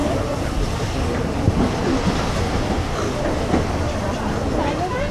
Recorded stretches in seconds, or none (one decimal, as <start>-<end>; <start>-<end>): 2.2-5.1